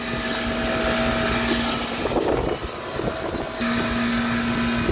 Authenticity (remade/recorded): recorded